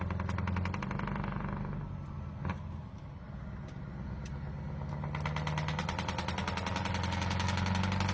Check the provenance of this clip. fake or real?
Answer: real